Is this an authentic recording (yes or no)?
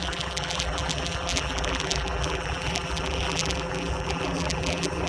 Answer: no